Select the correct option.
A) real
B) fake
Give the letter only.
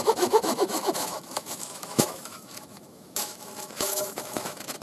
B